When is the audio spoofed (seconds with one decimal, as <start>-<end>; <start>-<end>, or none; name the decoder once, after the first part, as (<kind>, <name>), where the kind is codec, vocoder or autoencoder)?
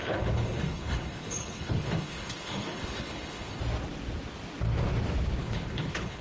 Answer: 0.0-3.6 (codec, HILCodec); 5.4-6.2